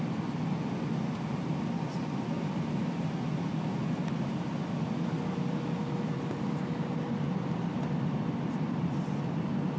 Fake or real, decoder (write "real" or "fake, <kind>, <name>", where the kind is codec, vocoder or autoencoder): real